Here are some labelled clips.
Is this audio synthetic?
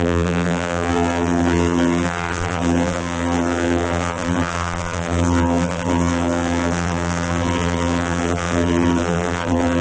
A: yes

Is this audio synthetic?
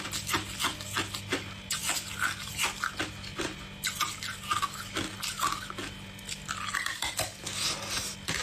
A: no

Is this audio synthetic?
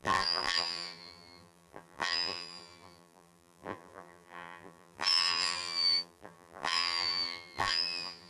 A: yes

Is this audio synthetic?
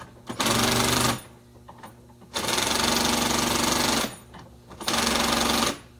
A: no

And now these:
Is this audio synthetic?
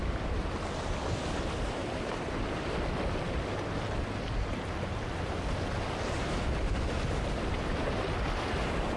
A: no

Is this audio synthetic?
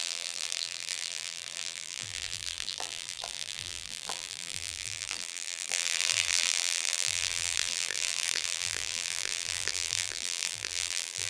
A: yes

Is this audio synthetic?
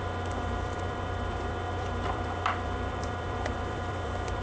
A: yes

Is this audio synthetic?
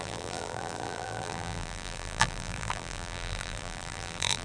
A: yes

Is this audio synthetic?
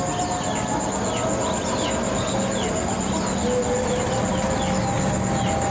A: no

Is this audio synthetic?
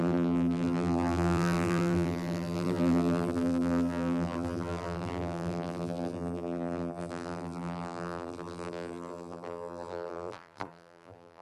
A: yes